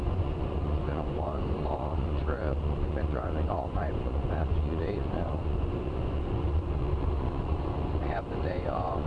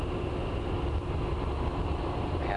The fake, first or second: first